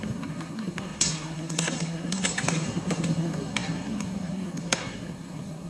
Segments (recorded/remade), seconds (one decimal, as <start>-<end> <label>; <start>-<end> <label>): 0.0-5.7 remade